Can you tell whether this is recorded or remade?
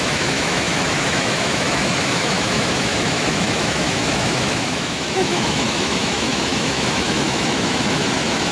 remade